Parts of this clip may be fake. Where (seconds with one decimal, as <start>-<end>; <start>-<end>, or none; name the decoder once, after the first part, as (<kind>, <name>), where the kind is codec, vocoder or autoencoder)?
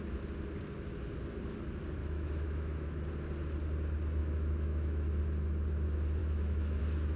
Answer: 2.0-3.0 (autoencoder, DAC-VAE); 4.2-5.2; 6.2-6.8